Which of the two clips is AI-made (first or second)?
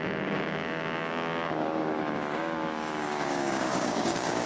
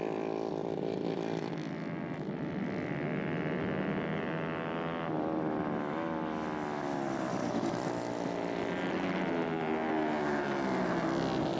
first